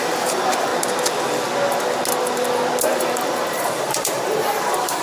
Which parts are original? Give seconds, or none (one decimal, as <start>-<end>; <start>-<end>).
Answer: 0.7-3.0